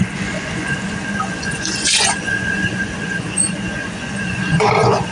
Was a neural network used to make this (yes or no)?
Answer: yes